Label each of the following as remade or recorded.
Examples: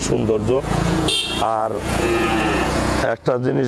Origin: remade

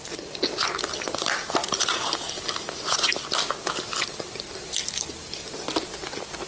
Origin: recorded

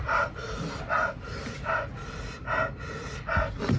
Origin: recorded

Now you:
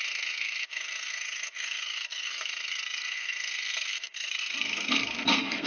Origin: remade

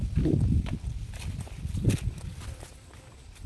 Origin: recorded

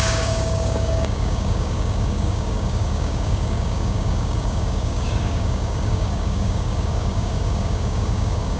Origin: remade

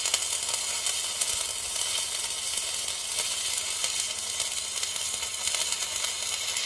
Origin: recorded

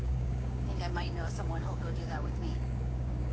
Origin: remade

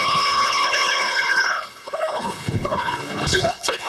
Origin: remade